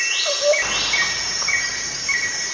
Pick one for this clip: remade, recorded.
recorded